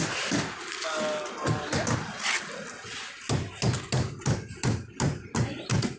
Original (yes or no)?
yes